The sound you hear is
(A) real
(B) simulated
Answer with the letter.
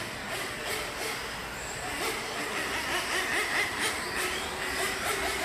A